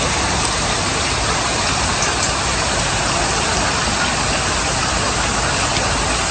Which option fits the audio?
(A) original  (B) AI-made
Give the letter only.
A